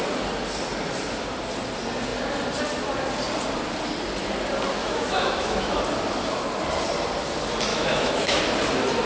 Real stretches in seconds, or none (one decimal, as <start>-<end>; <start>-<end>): 0.0-4.8; 5.8-7.7; 8.4-9.1